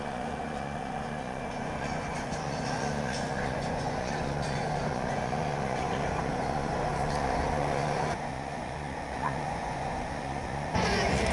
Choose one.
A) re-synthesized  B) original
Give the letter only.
A